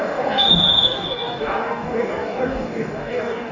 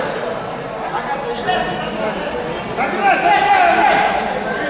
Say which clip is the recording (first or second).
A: second